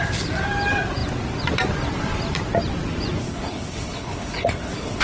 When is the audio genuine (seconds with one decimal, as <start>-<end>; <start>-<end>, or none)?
0.0-3.2